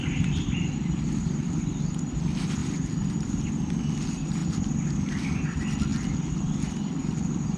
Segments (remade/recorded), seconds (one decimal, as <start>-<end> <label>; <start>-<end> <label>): 0.0-2.6 recorded; 2.6-3.4 remade; 3.4-7.6 recorded